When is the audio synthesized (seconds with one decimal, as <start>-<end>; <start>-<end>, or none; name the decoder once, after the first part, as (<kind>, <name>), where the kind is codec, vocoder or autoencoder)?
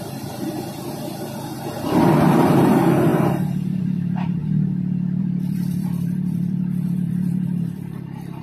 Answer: 0.0-4.4 (vocoder, BigVGAN v2); 5.2-8.4